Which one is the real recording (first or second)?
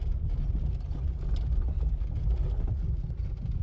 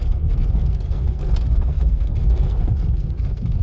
first